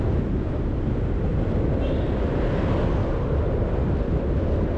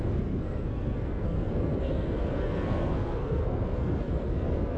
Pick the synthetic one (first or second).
second